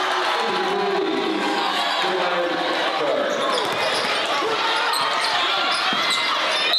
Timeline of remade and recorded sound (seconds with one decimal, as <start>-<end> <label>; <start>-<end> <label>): 0.0-1.3 recorded; 1.3-1.8 remade; 1.8-6.8 recorded